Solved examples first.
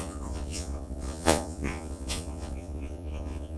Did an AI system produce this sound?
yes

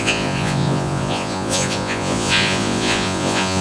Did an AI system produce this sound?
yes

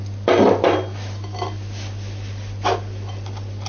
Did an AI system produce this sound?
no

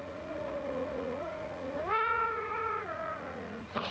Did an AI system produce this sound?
yes